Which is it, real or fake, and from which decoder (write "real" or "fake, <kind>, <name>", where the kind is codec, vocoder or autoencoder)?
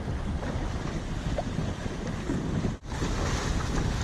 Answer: real